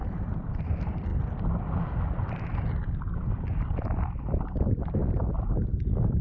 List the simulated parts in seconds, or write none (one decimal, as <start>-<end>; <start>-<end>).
0.6-1.1; 3.8-5.0; 5.8-6.2

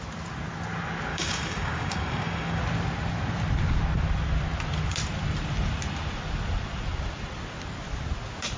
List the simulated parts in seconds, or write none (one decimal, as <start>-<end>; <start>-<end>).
1.1-2.6

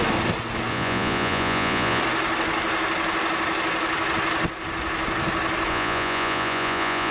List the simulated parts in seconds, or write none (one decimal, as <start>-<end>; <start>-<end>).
0.7-2.0; 5.7-7.1

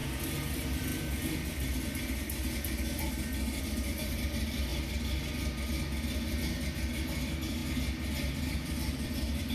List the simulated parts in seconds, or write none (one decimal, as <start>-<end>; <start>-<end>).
0.5-0.9; 3.6-4.7; 6.9-7.6; 8.4-9.5

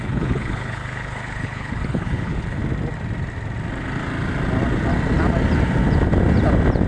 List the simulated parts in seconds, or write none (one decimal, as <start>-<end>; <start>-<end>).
0.0-2.6

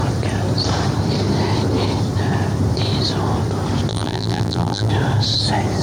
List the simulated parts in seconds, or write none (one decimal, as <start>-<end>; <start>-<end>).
3.9-4.9